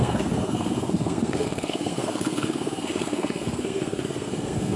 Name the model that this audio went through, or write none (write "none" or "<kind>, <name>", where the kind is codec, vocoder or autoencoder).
codec, SNAC